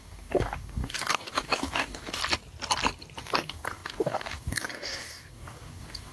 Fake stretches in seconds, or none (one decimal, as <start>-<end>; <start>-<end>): 0.0-2.2; 3.2-6.1